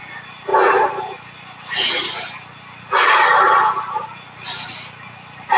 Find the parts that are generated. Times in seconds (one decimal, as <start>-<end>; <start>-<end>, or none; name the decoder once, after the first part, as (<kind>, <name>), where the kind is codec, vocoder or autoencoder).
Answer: 0.5-2.1 (vocoder, BigVGAN v2)